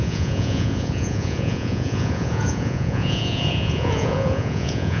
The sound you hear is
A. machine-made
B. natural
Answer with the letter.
A